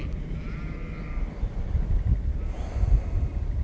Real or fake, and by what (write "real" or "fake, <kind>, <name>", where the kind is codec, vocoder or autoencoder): real